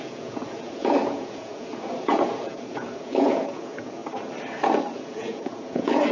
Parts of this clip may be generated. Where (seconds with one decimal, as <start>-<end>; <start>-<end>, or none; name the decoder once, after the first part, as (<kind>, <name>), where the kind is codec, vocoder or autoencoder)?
0.0-4.0 (vocoder, Vocos); 4.9-6.1